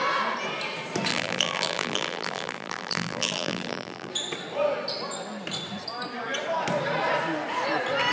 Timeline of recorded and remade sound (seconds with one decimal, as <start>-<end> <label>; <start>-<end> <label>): 0.0-1.1 recorded; 1.1-4.1 remade; 4.1-8.1 recorded